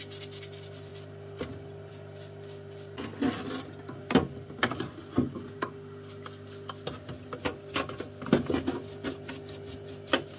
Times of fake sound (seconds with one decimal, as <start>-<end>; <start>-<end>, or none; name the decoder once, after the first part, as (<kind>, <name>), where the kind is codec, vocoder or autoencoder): none